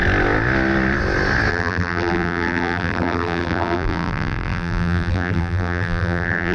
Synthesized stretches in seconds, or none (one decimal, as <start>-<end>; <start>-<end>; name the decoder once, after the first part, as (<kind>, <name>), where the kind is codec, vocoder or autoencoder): 1.5-6.5 (vocoder, BigVGAN v2)